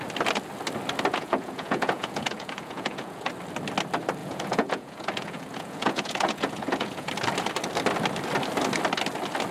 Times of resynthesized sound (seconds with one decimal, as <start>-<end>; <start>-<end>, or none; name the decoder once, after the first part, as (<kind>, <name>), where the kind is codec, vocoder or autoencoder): 1.1-3.3 (vocoder, Vocos); 4.2-7.1